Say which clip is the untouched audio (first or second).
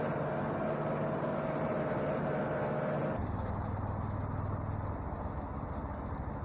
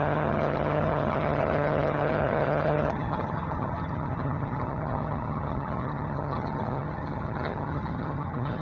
first